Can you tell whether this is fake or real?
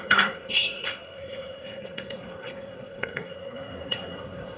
fake